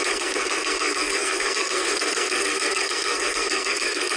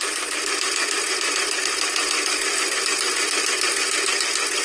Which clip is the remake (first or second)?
first